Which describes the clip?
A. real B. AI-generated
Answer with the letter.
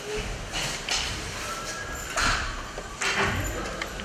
A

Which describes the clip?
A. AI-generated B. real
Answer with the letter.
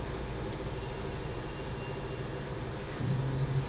B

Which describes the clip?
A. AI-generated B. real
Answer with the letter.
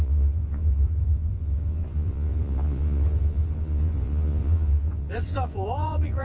A